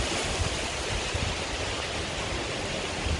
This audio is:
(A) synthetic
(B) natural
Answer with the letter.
B